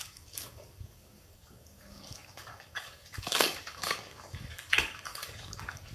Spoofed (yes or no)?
yes